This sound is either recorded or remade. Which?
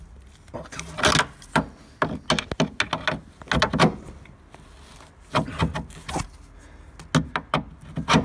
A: recorded